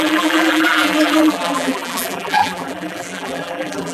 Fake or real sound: fake